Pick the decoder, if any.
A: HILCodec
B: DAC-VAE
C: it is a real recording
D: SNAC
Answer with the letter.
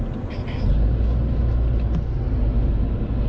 C